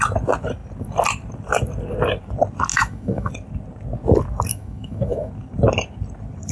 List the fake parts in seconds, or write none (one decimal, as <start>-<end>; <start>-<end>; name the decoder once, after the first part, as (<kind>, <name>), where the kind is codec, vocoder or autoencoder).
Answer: 2.7-3.3 (autoencoder, DAC-VAE); 4.5-5.3